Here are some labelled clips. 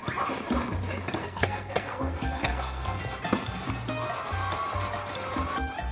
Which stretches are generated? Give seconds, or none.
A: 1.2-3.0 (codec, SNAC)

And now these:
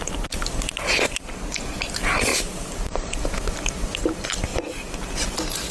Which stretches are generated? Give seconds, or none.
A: 2.3-3.4 (vocoder, BigVGAN v2); 4.5-5.1

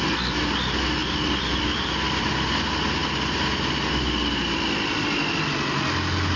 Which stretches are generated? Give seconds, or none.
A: 1.0-2.5 (vocoder, BigVGAN v2)

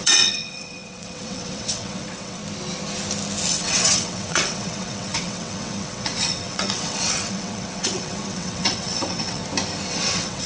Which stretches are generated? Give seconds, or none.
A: 0.0-2.4 (vocoder, WaveNeXt); 3.5-9.4; 9.9-10.5